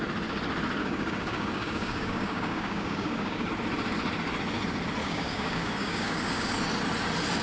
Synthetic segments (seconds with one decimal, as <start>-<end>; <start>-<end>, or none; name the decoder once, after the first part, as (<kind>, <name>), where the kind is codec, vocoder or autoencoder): 0.8-3.5 (codec, DAC); 5.0-6.5